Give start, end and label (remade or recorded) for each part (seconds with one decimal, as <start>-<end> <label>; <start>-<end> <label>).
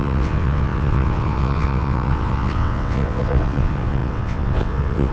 0.0-5.1 remade